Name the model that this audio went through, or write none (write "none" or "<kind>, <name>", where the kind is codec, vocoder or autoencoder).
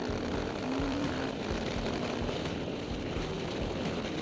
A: vocoder, BigVGAN v2